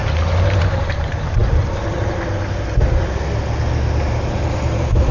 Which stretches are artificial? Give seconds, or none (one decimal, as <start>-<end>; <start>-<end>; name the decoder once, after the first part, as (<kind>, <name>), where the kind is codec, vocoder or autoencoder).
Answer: 0.6-1.4 (vocoder, BigVGAN v2); 4.5-5.1